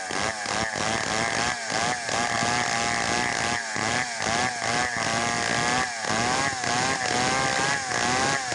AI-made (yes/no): no